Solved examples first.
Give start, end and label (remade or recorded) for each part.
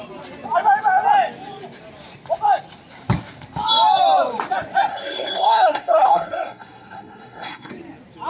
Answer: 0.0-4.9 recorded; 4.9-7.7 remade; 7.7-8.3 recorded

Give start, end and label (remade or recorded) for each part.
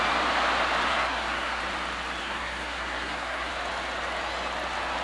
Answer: 0.0-0.9 recorded; 0.9-1.6 remade; 1.6-2.2 recorded; 2.2-3.5 remade; 3.5-5.0 recorded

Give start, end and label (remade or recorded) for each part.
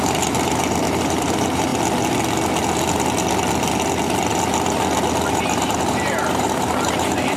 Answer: 0.0-1.7 remade; 1.7-5.3 recorded; 5.3-7.4 remade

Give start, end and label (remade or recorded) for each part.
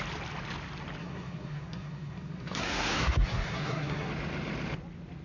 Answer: 0.0-1.0 recorded; 1.0-4.1 remade; 4.1-5.2 recorded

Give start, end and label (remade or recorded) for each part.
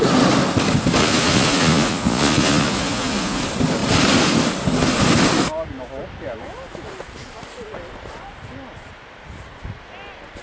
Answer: 0.0-1.0 recorded; 1.0-3.4 remade; 3.4-10.4 recorded